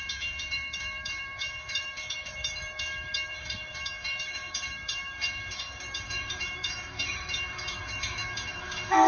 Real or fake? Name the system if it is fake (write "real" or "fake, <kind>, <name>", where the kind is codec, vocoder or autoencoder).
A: fake, autoencoder, DAC-VAE